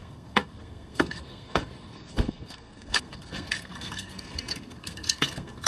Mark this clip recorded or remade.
remade